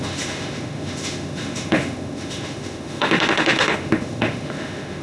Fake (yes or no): yes